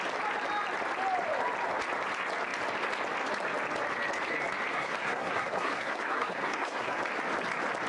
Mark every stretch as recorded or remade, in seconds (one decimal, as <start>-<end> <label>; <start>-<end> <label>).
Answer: 0.0-4.7 recorded; 4.7-7.0 remade; 7.0-7.9 recorded

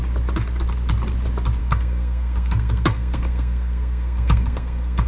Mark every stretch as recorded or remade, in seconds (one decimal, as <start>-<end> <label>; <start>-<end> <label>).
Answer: 0.0-1.6 recorded; 1.6-5.1 remade

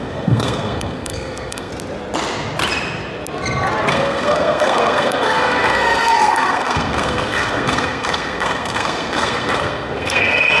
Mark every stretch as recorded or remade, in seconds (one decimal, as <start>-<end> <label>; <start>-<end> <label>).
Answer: 0.0-1.7 remade; 1.7-3.9 recorded; 3.9-10.6 remade

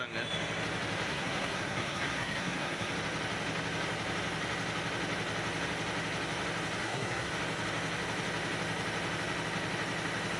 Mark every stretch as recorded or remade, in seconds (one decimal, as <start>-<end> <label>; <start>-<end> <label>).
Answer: 0.0-1.1 recorded; 1.1-2.9 remade; 2.9-6.8 recorded; 6.8-7.3 remade; 7.3-10.4 recorded

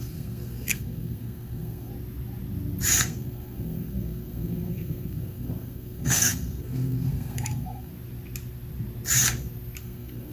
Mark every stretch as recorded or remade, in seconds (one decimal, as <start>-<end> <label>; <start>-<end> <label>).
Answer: 0.0-1.9 remade; 1.9-3.0 recorded; 3.0-7.9 remade; 7.9-9.8 recorded; 9.8-10.3 remade

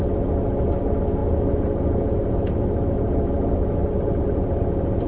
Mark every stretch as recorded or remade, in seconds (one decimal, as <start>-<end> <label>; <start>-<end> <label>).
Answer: 0.0-5.1 recorded

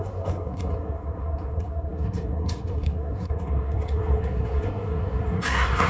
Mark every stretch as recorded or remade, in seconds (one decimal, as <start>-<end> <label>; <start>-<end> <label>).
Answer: 0.0-5.9 remade